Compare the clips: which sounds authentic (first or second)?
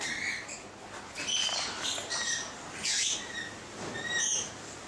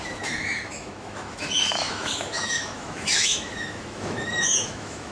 first